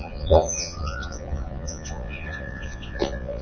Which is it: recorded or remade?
remade